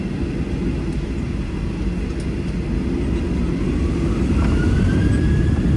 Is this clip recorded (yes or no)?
yes